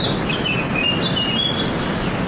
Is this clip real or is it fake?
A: real